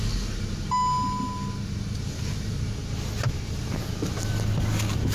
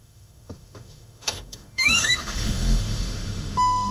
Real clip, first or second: first